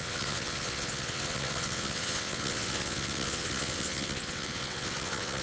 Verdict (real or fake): fake